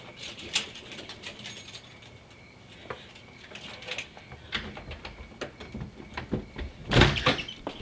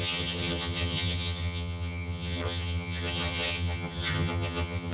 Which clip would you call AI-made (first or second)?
second